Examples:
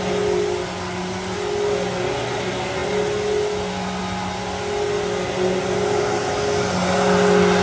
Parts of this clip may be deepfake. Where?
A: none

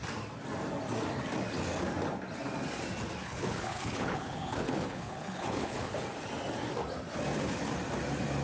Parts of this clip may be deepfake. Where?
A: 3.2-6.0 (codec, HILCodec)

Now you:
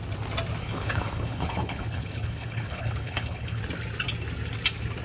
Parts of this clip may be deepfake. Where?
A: 0.6-3.6 (codec, HILCodec)